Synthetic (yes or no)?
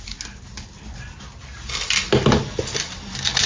no